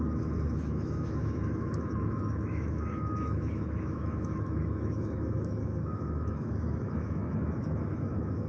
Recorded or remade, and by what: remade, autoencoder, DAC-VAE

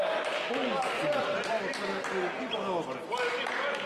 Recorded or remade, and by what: recorded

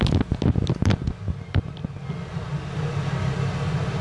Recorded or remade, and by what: recorded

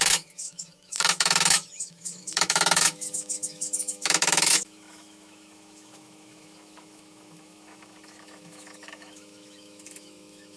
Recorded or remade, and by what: remade, autoencoder, DAC-VAE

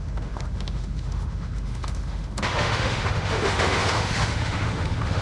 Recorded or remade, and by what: remade, autoencoder, DAC-VAE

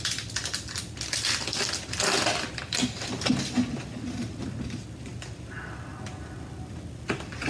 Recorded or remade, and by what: recorded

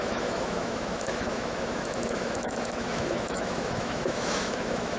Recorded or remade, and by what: remade, autoencoder, DAC-VAE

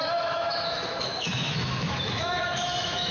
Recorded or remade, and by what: remade, autoencoder, DAC-VAE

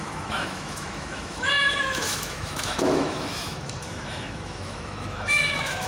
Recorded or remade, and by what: remade, autoencoder, DAC-VAE